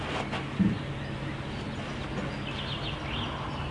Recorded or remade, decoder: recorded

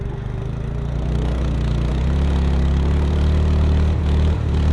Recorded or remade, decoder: remade, vocoder, BigVGAN v2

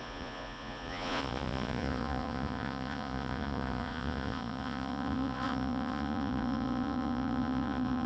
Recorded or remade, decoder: remade, vocoder, Vocos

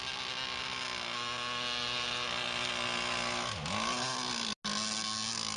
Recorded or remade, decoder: recorded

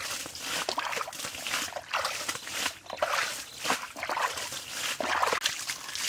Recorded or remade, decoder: recorded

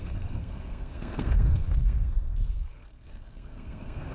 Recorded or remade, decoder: remade, codec, SNAC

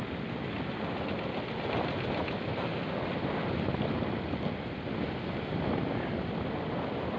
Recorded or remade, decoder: recorded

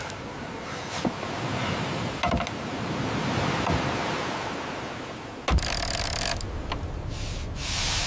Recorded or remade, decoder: recorded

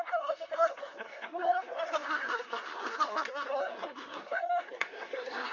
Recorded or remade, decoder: remade, codec, SNAC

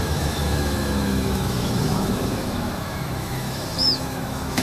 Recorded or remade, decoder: remade, autoencoder, DAC-VAE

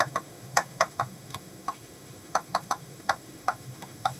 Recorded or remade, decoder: remade, autoencoder, DAC-VAE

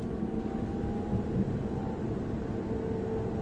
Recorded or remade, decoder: recorded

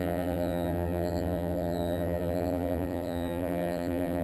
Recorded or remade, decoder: remade, vocoder, BigVGAN v2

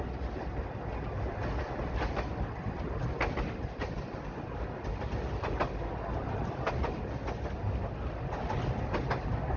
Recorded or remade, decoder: recorded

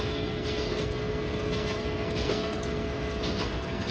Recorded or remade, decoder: remade, codec, SNAC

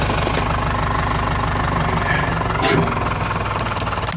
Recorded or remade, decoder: recorded